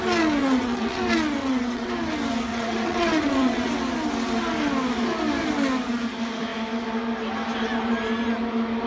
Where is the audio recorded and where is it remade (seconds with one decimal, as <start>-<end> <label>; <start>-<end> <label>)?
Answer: 0.0-0.4 recorded; 0.4-1.0 remade; 1.0-1.4 recorded; 1.4-1.9 remade; 1.9-2.5 recorded; 2.5-3.7 remade; 3.7-8.9 recorded